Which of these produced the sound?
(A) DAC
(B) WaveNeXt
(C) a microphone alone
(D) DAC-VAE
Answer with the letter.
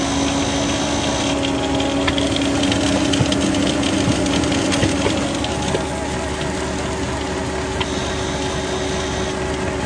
C